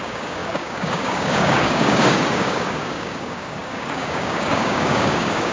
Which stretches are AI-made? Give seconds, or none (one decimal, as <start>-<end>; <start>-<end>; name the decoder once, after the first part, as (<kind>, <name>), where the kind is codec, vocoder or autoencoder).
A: 0.0-5.5 (codec, DAC)